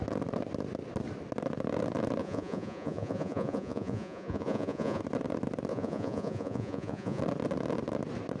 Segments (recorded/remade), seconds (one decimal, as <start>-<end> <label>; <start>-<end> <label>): 0.0-2.2 recorded; 2.2-5.0 remade; 5.0-5.7 recorded; 5.7-7.2 remade; 7.2-8.4 recorded